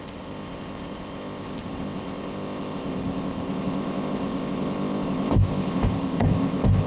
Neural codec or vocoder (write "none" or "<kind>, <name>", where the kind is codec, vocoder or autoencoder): codec, ZipCodec